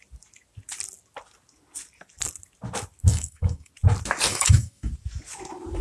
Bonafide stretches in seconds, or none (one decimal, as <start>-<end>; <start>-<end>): 0.0-3.1; 3.7-4.3; 4.9-5.8